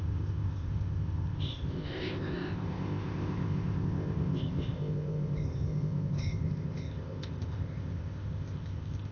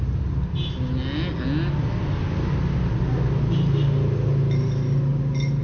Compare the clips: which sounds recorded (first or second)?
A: second